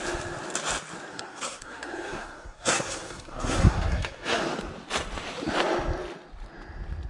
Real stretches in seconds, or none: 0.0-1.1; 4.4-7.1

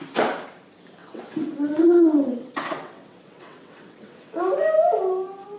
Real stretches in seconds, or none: 0.0-1.0; 4.4-5.6

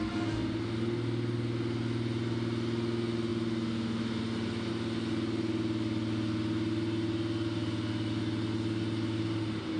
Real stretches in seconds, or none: 0.0-9.8

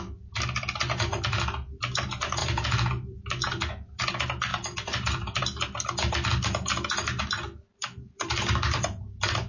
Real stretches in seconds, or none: 0.0-2.4; 3.7-4.5; 5.4-7.7; 9.0-9.5

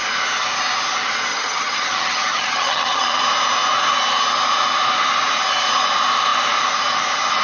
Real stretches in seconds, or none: 0.0-1.3; 3.2-7.4

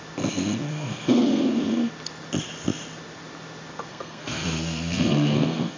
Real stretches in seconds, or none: 0.0-0.7; 1.6-3.9